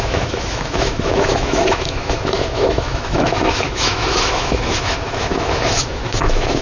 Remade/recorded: remade